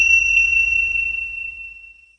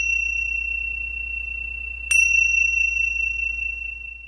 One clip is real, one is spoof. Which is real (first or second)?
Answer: second